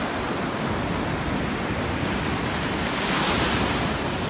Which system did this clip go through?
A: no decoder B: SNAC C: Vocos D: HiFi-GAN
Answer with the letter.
A